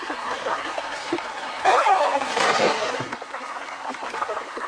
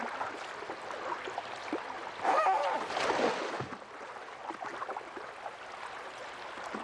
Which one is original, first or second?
second